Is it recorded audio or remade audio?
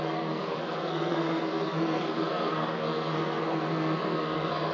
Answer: remade